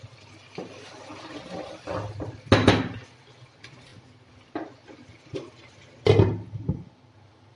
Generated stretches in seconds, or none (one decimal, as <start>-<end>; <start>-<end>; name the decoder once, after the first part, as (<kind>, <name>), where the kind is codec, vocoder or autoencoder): none